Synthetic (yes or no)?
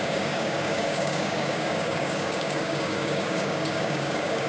yes